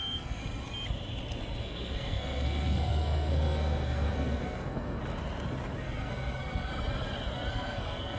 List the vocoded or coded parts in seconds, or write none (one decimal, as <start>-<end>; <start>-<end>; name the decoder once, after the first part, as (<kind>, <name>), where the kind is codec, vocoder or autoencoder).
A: 0.0-0.4 (codec, SNAC); 1.6-5.0; 5.8-6.7; 7.5-8.2